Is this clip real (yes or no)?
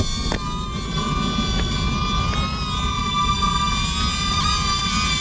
yes